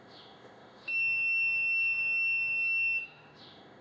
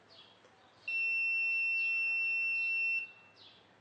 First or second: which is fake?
first